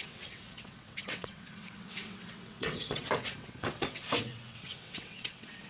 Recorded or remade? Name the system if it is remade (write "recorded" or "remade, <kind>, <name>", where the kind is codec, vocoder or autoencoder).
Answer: remade, vocoder, WaveNeXt